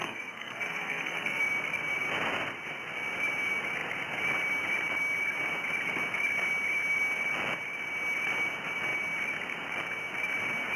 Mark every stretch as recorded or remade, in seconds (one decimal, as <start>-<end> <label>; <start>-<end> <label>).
0.0-1.4 remade; 1.4-10.8 recorded